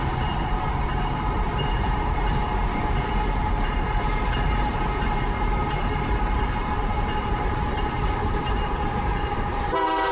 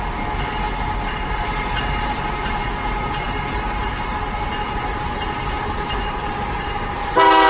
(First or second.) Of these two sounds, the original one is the second